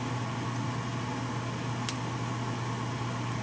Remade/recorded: recorded